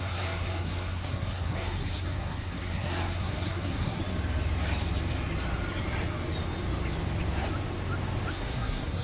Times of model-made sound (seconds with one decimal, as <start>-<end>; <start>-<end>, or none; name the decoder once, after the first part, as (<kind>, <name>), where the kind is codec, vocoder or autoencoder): 0.0-4.0 (codec, SNAC); 8.3-9.0